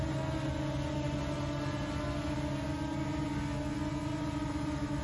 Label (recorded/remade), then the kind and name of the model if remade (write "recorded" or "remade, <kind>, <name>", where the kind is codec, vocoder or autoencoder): recorded